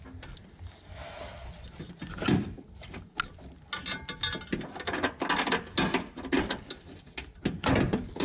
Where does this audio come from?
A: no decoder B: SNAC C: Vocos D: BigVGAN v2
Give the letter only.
A